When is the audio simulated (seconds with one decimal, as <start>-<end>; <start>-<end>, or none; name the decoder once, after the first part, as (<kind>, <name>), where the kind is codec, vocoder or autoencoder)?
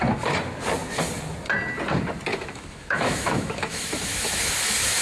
2.3-4.5 (autoencoder, DAC-VAE)